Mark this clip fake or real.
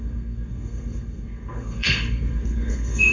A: fake